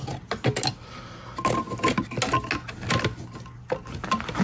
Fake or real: real